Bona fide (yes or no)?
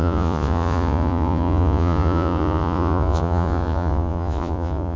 no